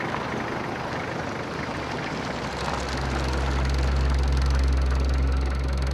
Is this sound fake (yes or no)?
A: no